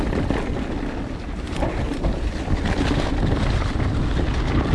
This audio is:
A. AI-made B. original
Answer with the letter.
B